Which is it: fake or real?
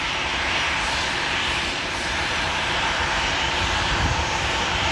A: fake